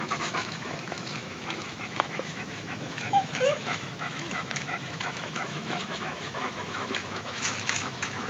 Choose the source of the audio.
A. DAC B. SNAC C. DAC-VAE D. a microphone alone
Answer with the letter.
C